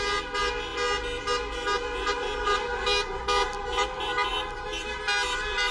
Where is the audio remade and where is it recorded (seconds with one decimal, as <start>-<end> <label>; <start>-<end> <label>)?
0.0-5.7 recorded